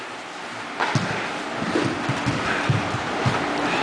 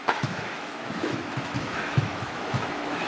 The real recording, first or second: first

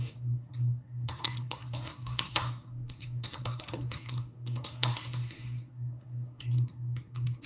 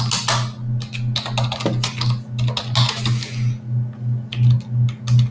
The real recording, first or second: second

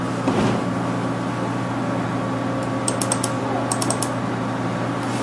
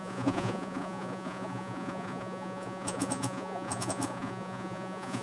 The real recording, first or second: first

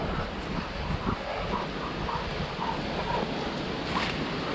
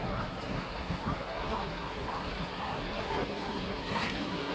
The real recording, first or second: first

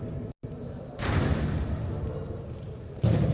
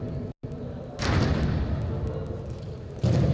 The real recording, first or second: second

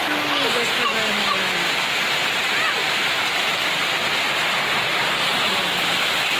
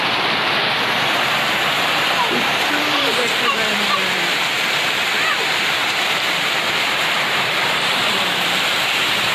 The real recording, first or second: first